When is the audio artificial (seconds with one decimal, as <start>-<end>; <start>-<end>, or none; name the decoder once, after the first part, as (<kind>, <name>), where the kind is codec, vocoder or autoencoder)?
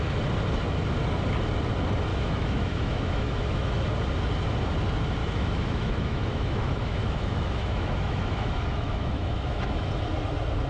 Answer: 2.1-3.8 (autoencoder, DAC-VAE); 5.2-9.9